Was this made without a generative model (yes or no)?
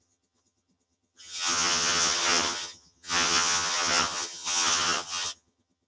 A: no